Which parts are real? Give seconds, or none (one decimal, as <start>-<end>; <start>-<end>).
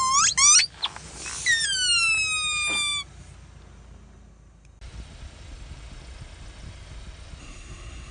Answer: 0.0-7.4